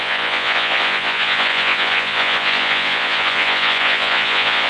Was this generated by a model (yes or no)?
yes